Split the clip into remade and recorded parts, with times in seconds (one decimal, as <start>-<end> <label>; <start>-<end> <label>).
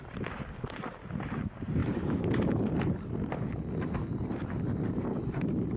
0.0-1.8 recorded; 1.8-2.6 remade; 2.6-5.8 recorded